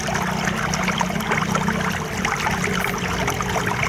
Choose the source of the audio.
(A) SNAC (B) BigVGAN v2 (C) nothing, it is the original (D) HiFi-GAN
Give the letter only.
C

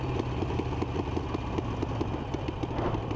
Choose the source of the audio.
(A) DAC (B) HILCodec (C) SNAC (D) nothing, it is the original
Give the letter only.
D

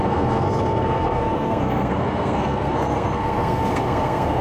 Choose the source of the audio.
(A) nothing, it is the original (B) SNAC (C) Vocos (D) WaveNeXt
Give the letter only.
B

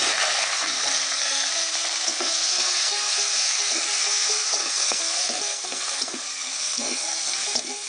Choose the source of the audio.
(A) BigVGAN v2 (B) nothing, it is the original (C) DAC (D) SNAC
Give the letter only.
D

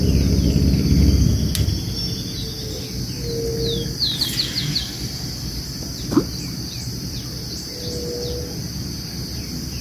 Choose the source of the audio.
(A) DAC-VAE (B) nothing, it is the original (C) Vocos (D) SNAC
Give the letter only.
B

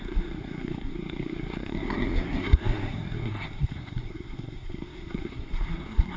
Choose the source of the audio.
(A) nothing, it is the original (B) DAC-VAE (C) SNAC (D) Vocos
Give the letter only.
C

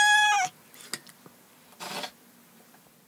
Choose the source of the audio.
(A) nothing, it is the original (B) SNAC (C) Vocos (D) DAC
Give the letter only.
A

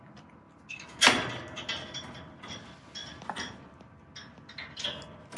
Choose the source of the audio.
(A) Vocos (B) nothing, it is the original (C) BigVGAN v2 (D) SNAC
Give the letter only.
B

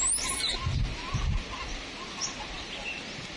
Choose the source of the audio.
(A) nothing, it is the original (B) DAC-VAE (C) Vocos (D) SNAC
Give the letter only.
A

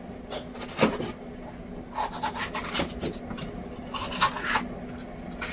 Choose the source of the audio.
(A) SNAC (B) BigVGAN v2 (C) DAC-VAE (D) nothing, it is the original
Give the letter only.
D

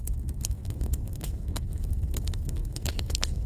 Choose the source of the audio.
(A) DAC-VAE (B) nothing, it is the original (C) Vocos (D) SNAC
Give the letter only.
D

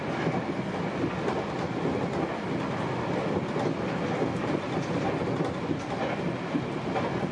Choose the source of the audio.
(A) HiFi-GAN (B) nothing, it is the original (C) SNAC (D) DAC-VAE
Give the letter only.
B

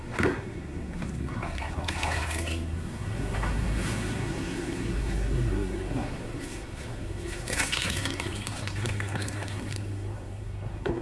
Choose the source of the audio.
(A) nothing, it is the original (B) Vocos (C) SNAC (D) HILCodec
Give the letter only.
C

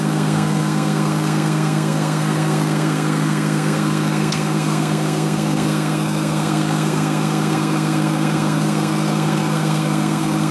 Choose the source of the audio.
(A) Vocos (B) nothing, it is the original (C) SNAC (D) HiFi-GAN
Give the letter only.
C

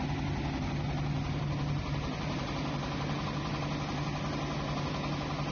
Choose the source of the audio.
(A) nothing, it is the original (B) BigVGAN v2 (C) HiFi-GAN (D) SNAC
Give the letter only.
A